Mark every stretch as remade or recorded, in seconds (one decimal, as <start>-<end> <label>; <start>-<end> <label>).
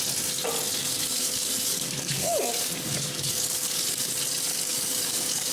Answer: 0.0-0.8 recorded; 0.8-4.1 remade; 4.1-4.5 recorded; 4.5-5.5 remade